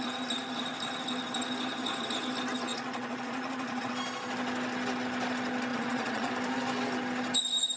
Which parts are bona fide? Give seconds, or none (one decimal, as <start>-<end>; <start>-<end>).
0.0-2.7; 3.9-5.7; 6.3-7.8